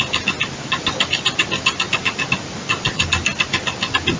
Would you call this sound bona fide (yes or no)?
yes